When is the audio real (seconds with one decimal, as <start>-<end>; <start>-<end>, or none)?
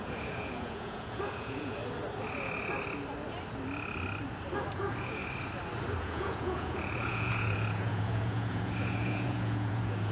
1.8-4.7; 5.2-6.0